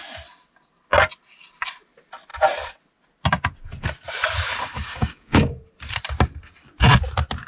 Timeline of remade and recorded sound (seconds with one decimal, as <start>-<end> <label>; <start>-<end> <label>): 0.0-4.8 recorded; 4.8-5.4 remade; 5.4-7.5 recorded